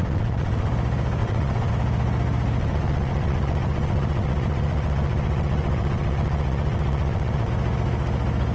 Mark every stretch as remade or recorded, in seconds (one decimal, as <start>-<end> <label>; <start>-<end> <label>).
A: 0.0-0.7 remade; 0.7-1.2 recorded; 1.2-1.7 remade; 1.7-2.6 recorded; 2.6-7.5 remade; 7.5-8.5 recorded